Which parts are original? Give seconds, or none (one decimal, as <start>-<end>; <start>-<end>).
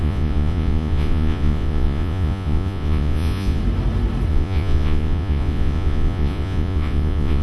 3.6-4.3